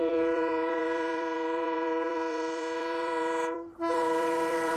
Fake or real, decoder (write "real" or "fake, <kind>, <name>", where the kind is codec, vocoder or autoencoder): fake, vocoder, BigVGAN v2